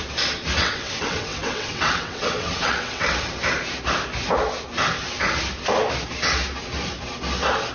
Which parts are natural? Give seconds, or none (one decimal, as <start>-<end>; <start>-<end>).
0.0-0.6; 3.2-7.7